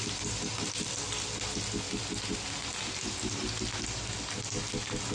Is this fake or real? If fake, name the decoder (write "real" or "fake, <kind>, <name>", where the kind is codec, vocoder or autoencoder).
real